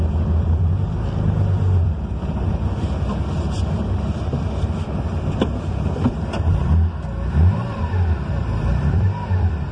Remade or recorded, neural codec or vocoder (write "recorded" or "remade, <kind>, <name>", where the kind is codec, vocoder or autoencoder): remade, vocoder, BigVGAN v2